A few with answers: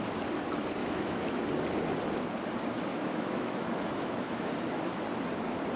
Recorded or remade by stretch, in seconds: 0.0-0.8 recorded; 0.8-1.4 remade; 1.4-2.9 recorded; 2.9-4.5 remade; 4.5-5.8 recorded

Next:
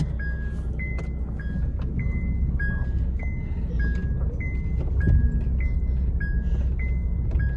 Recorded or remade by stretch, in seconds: 0.0-7.6 recorded

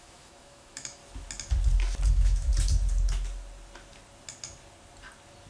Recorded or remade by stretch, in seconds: 0.0-1.0 remade; 1.0-2.1 recorded; 2.1-2.5 remade; 2.5-5.5 recorded

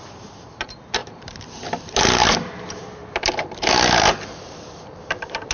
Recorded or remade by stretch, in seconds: 0.0-5.5 remade

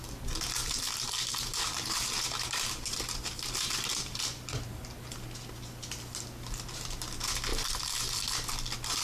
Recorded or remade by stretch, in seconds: 0.0-1.5 recorded; 1.5-4.8 remade; 4.8-9.0 recorded